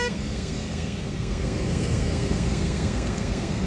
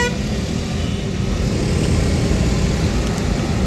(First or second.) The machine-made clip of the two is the first